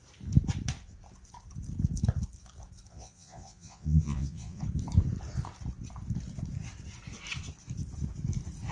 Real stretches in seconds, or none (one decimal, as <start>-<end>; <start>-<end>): 0.0-2.9; 4.6-8.7